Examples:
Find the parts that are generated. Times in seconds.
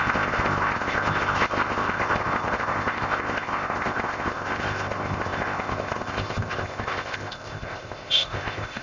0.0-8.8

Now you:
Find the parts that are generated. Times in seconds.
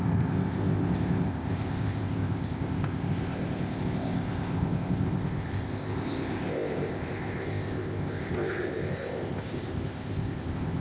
0.0-10.8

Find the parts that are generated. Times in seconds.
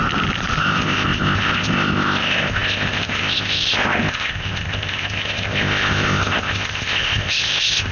0.6-7.9